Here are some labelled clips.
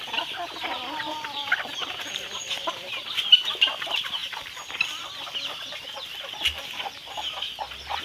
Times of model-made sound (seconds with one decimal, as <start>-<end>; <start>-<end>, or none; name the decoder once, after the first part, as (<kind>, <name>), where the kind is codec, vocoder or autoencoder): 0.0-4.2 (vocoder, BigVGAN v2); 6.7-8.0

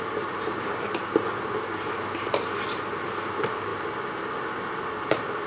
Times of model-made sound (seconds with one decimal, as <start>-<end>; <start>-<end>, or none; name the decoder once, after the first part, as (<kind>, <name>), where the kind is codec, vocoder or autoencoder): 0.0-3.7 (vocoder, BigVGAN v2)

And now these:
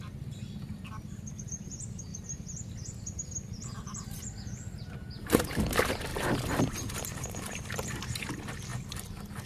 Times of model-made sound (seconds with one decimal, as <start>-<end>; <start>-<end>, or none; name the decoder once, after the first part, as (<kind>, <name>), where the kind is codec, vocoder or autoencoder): 6.1-8.0 (vocoder, BigVGAN v2); 8.7-9.5

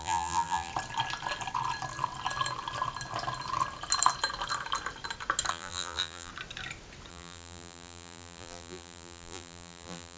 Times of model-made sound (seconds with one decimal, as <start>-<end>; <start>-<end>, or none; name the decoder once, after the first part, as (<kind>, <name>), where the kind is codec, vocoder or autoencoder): 0.0-0.7 (vocoder, BigVGAN v2); 5.5-6.3; 7.1-10.2

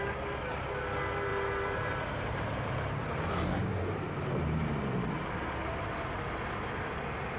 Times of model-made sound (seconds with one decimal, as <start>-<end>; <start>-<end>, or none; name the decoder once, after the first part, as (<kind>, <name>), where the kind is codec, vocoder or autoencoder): 1.3-3.2 (vocoder, BigVGAN v2); 3.6-4.7

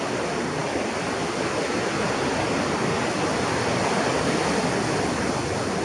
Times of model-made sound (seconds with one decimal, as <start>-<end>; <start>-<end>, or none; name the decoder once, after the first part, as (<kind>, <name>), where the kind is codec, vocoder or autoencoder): none

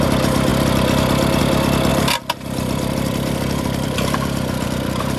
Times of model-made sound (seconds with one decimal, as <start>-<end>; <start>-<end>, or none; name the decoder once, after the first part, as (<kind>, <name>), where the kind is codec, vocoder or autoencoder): 1.9-5.2 (vocoder, BigVGAN v2)

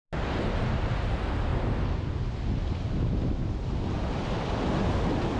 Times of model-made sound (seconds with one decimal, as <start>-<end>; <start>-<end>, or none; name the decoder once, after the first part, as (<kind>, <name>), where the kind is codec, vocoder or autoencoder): none